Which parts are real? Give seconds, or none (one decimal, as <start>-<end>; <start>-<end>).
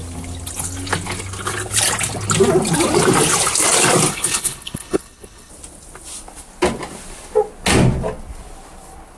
0.0-4.1; 5.5-9.2